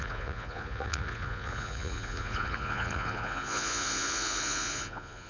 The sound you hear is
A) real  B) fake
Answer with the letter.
B